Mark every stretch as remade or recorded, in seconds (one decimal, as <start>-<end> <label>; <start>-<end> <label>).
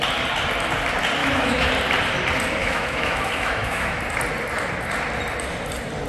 0.0-1.2 recorded; 1.2-1.7 remade; 1.7-2.6 recorded; 2.6-4.0 remade; 4.0-6.1 recorded